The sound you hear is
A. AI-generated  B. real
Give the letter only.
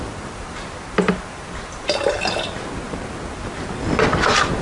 B